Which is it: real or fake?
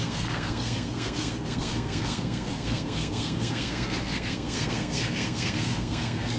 fake